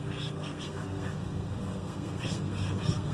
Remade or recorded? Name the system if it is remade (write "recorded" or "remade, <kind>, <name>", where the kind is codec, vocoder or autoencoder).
remade, codec, SNAC